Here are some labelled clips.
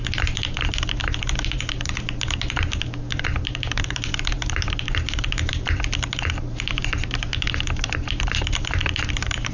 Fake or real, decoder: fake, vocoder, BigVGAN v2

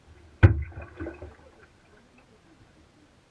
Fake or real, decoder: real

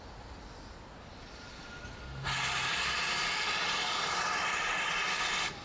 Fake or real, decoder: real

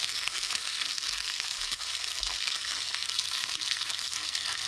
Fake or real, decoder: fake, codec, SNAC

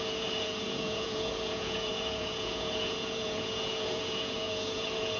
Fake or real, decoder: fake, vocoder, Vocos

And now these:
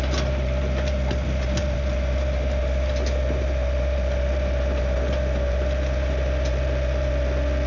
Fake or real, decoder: real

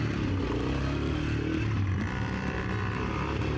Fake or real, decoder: real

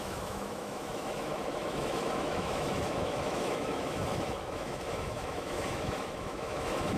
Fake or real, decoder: fake, autoencoder, DAC-VAE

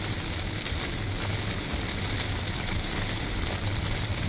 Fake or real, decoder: real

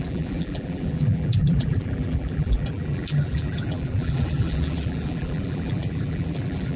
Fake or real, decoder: fake, vocoder, BigVGAN v2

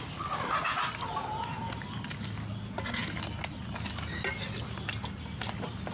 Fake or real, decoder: real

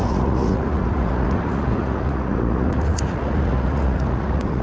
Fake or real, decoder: fake, vocoder, Vocos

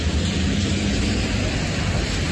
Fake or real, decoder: fake, vocoder, BigVGAN v2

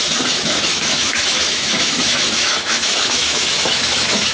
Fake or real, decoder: fake, autoencoder, DAC-VAE